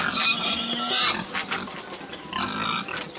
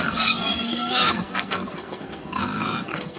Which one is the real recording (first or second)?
first